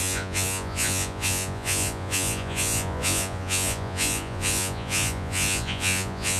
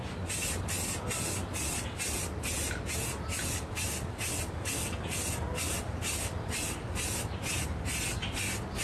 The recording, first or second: second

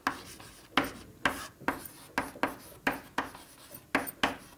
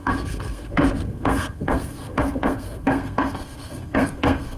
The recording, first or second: first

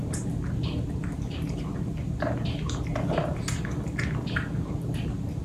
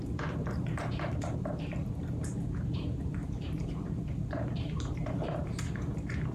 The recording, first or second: first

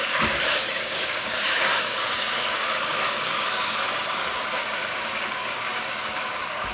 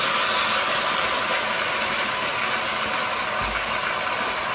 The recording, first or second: second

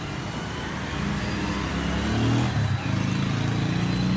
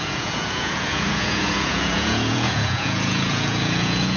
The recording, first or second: first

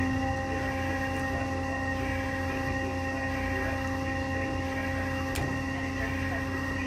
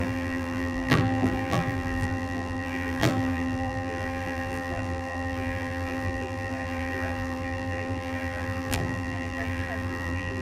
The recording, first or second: first